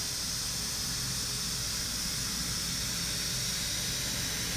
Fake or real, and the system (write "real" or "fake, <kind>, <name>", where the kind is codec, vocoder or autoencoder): real